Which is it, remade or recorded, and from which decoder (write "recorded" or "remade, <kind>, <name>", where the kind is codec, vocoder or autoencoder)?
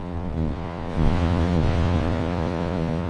remade, vocoder, Vocos